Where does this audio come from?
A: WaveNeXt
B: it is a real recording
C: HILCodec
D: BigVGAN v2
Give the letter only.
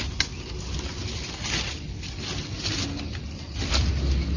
B